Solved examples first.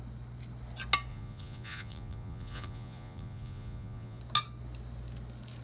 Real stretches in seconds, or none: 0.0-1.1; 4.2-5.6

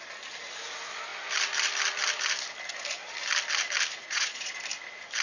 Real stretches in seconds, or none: 0.0-4.0; 4.6-5.2

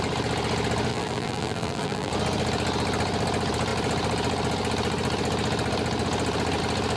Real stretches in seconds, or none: 0.0-0.9; 2.1-7.0

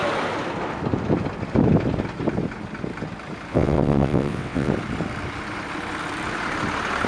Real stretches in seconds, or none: 0.0-3.5; 4.7-7.1

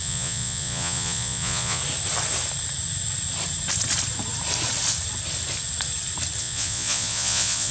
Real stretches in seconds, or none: 1.8-6.4

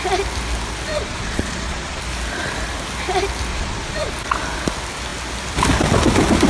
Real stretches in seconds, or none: 0.0-0.9; 2.0-3.5; 4.1-6.5

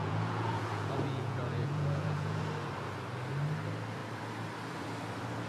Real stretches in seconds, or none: 2.4-5.5

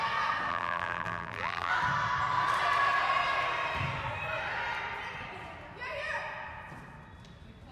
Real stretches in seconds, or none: 0.0-0.5; 1.7-7.7